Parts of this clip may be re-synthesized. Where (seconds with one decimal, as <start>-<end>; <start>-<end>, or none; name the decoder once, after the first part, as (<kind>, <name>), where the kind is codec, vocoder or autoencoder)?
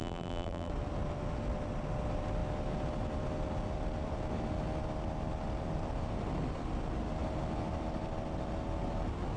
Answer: 0.0-0.7 (vocoder, BigVGAN v2)